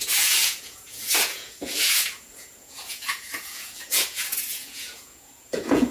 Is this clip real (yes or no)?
no